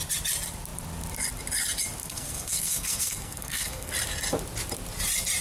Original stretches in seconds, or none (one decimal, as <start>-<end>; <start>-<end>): 0.0-2.0; 3.9-5.4